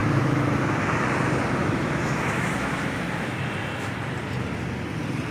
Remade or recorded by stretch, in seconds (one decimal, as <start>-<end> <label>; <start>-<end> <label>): 0.0-0.5 remade; 0.5-1.6 recorded; 1.6-3.5 remade; 3.5-5.3 recorded